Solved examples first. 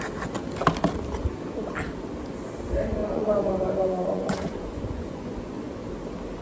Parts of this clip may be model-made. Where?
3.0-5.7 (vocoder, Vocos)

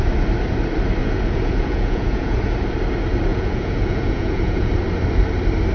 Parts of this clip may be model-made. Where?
1.0-2.4 (vocoder, Vocos); 3.3-4.7

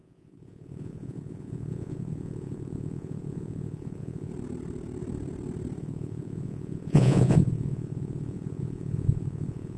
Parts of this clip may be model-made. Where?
0.0-4.3 (vocoder, Vocos); 5.8-9.8

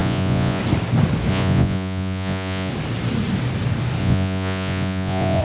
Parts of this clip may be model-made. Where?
0.0-0.6 (vocoder, Vocos); 1.3-2.7; 4.0-5.4

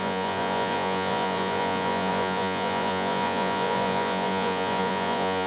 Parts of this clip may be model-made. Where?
0.0-5.5 (vocoder, Vocos)